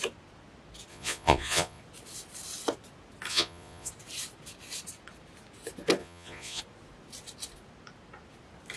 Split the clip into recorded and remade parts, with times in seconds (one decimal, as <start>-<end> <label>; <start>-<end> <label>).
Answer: 0.0-0.9 recorded; 0.9-1.8 remade; 1.8-3.3 recorded; 3.3-3.9 remade; 3.9-6.0 recorded; 6.0-6.6 remade; 6.6-8.8 recorded